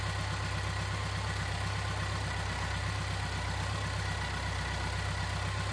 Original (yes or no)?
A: yes